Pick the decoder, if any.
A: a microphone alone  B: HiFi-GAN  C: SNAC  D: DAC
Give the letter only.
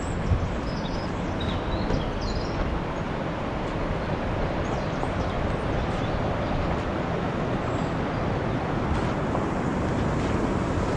A